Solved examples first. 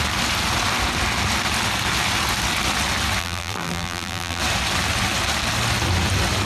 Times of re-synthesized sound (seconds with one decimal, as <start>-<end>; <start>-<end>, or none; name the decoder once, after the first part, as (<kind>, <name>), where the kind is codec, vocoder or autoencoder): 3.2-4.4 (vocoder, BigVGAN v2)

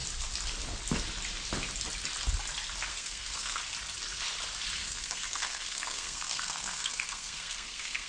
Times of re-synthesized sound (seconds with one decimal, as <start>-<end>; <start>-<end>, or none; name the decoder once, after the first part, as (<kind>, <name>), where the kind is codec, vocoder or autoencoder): 2.9-3.6 (codec, SNAC); 4.8-8.1

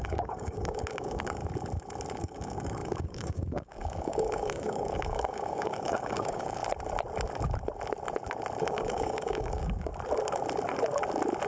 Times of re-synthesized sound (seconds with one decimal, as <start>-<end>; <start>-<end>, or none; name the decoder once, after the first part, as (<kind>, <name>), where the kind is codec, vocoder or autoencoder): 0.0-1.4 (codec, DAC); 2.2-6.6; 8.6-9.9